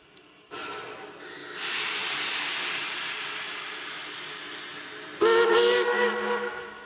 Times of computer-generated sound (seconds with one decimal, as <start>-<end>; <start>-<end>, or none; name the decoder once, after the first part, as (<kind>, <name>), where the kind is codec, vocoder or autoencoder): none